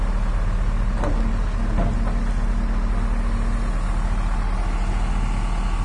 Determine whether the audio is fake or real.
real